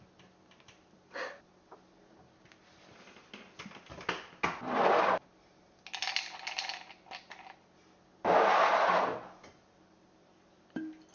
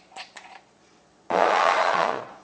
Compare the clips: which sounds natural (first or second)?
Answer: first